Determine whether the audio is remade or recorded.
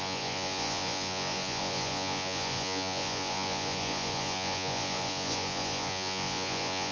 remade